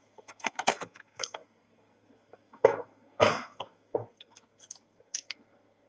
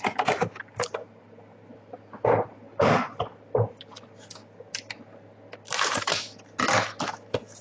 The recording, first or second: second